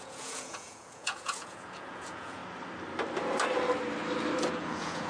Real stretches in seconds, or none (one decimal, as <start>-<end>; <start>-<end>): 2.4-4.5